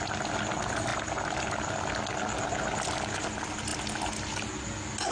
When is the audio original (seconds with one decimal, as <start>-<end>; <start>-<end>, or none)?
0.0-5.1